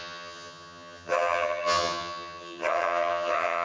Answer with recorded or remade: remade